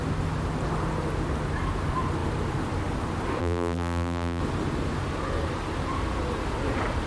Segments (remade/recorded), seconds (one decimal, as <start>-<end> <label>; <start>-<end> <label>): 0.0-3.4 recorded; 3.4-4.4 remade; 4.4-7.1 recorded